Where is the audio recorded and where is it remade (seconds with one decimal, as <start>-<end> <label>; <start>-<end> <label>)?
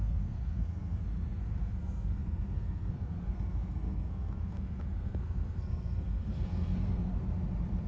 0.0-7.1 remade; 7.1-7.9 recorded